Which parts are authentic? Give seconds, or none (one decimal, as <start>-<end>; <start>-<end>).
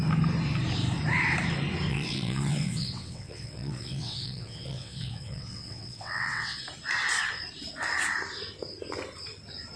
0.0-1.9; 6.6-9.8